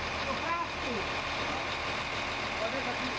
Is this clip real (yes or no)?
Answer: yes